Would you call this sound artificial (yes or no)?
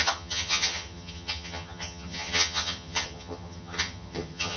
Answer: yes